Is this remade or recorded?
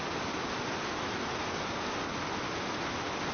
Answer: recorded